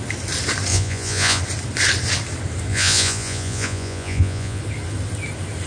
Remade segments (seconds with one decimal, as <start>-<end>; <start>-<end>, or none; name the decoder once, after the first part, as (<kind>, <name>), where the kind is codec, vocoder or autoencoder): 0.7-1.4 (vocoder, Vocos); 2.7-4.6